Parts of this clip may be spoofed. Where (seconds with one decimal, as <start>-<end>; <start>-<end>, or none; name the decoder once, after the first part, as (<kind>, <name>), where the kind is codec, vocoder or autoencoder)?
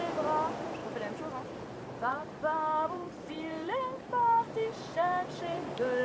0.8-1.5 (vocoder, BigVGAN v2); 2.1-6.0